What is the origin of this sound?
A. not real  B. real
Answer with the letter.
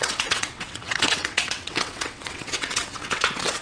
A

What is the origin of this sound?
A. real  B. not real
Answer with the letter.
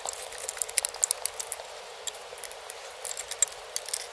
A